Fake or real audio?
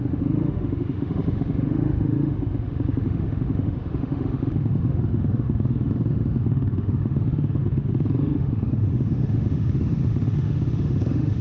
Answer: fake